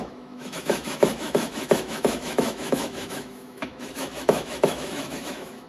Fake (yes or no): yes